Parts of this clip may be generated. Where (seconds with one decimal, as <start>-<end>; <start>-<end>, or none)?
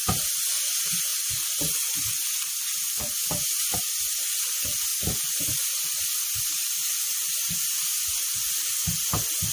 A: none